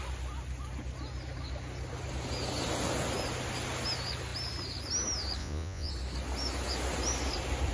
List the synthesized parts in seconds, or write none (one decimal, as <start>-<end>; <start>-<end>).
5.4-5.9